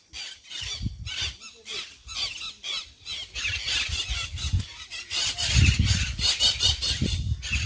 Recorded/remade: recorded